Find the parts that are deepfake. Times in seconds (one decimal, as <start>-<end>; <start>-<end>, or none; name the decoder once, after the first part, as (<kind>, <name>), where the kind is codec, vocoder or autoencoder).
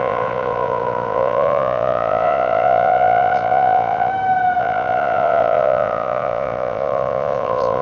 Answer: 0.0-4.1 (vocoder, Vocos); 4.6-7.8